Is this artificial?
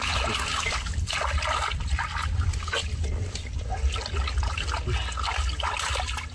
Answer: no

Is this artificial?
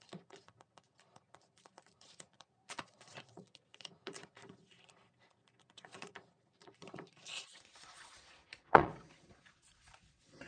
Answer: yes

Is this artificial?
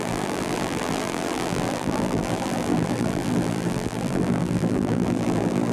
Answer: yes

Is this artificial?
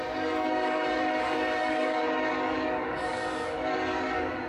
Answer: yes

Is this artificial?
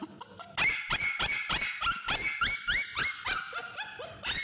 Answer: no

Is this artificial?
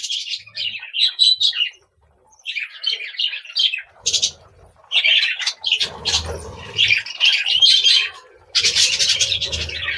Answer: yes